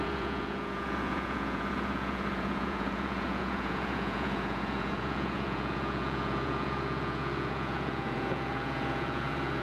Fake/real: fake